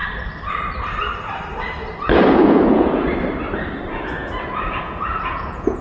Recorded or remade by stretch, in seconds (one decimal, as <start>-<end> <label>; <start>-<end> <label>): 0.0-2.3 recorded; 2.3-3.1 remade; 3.1-3.8 recorded; 3.8-5.8 remade